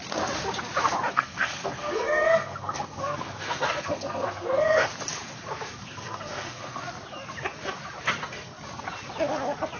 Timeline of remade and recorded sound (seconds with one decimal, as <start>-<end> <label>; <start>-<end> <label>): 0.0-1.1 recorded; 1.1-4.9 remade; 4.9-5.8 recorded; 5.8-6.8 remade; 6.8-9.8 recorded